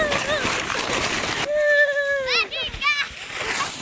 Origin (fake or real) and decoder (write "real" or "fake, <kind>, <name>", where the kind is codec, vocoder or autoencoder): real